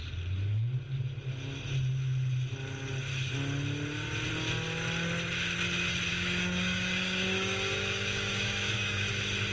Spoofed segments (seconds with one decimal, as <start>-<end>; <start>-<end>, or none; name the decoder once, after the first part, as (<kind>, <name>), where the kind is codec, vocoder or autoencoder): 6.1-9.1 (codec, DAC)